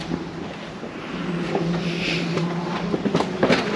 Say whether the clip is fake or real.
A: real